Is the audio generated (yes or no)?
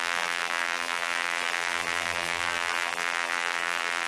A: yes